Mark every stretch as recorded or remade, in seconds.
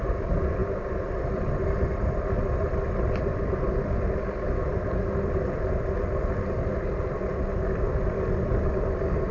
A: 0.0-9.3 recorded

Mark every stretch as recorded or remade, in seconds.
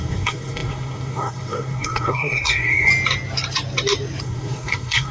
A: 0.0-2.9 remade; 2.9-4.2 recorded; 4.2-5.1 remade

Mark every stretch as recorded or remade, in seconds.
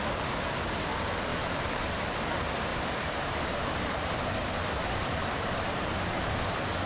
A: 0.0-1.3 recorded; 1.3-2.1 remade; 2.1-2.7 recorded; 2.7-6.9 remade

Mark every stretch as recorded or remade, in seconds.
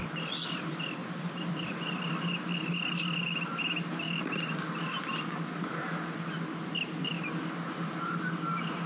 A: 0.0-8.9 recorded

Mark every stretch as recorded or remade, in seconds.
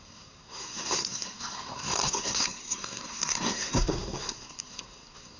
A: 0.0-5.4 remade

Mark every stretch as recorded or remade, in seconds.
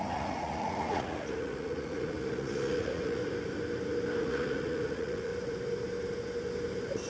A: 0.0-3.2 remade; 3.2-4.2 recorded; 4.2-5.3 remade; 5.3-7.1 recorded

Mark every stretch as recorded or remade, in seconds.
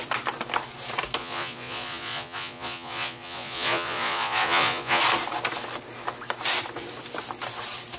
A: 0.0-1.2 recorded; 1.2-5.0 remade; 5.0-8.0 recorded